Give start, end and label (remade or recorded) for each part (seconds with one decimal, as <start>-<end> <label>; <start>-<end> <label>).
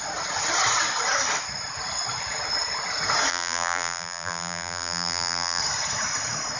0.0-3.3 recorded; 3.3-5.6 remade; 5.6-6.6 recorded